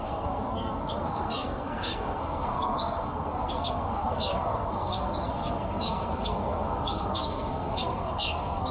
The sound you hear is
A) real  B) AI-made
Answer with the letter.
B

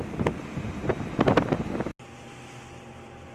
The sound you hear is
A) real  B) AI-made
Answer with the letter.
A